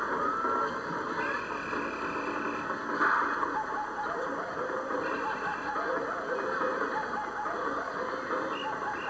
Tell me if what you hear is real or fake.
real